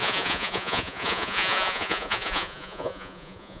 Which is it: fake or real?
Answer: fake